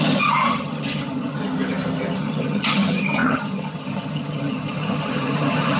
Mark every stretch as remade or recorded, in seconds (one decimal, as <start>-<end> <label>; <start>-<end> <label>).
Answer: 0.0-1.4 remade; 1.4-2.2 recorded; 2.2-5.8 remade